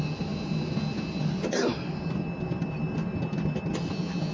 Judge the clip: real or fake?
real